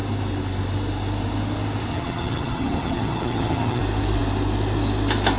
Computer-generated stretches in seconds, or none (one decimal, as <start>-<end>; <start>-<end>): 1.9-3.8